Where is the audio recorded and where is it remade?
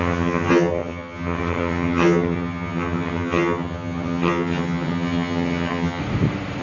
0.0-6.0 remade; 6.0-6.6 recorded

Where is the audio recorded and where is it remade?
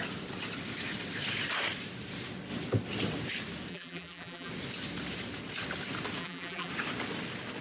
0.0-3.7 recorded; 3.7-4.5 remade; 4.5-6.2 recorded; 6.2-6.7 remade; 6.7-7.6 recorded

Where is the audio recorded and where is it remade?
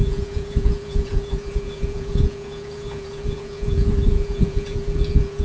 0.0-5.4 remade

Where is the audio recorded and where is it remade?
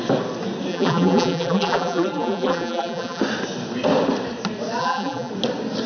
0.0-0.7 recorded; 0.7-3.2 remade; 3.2-4.8 recorded; 4.8-5.3 remade; 5.3-5.9 recorded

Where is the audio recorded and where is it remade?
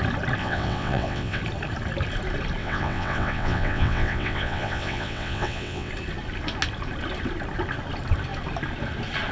0.0-0.4 recorded; 0.4-1.4 remade; 1.4-2.6 recorded; 2.6-5.9 remade; 5.9-9.3 recorded